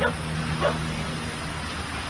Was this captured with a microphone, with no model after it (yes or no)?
yes